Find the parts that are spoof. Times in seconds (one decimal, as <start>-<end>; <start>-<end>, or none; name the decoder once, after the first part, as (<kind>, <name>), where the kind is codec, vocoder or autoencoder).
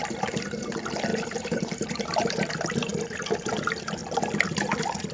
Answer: 1.1-2.5 (vocoder, BigVGAN v2)